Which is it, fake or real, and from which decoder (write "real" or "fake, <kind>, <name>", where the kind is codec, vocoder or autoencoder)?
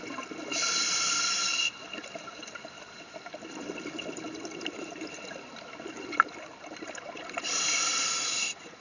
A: real